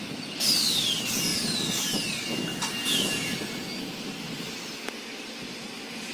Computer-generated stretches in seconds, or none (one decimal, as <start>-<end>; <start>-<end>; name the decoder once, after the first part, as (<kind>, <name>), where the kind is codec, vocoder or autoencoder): none